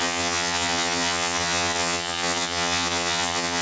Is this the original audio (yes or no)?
no